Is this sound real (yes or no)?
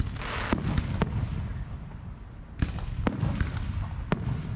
yes